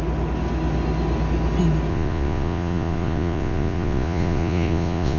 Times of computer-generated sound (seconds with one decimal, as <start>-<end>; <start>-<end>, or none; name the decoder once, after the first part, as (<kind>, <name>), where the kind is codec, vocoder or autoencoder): 1.9-5.2 (vocoder, Vocos)